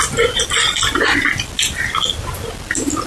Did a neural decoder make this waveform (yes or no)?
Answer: no